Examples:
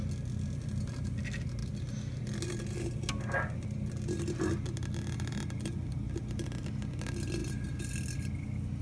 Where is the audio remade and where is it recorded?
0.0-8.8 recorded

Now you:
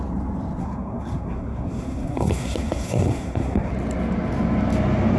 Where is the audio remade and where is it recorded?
0.0-0.6 recorded; 0.6-3.7 remade; 3.7-5.2 recorded